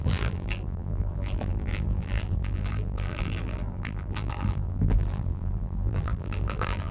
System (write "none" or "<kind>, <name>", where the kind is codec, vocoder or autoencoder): vocoder, BigVGAN v2